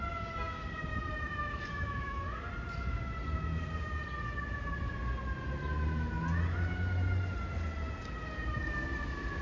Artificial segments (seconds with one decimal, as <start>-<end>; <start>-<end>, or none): 0.9-2.3